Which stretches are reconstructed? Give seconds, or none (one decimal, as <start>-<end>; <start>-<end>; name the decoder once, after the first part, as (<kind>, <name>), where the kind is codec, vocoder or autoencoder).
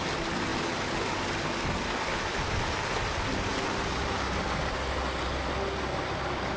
none